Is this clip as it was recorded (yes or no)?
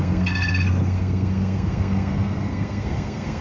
no